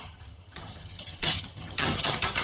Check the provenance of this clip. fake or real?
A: fake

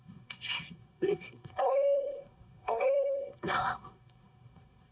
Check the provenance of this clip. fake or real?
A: fake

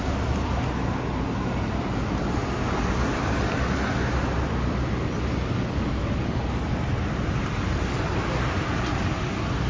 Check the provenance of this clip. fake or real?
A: real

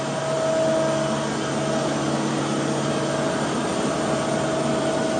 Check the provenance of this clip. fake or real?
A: real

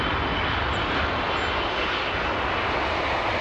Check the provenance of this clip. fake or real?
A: real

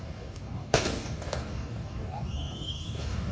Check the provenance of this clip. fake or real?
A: fake